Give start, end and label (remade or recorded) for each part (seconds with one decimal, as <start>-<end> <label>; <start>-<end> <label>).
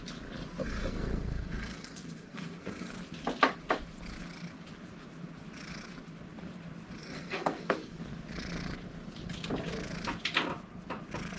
0.0-0.6 recorded; 0.6-2.9 remade; 2.9-7.0 recorded; 7.0-8.0 remade; 8.0-11.4 recorded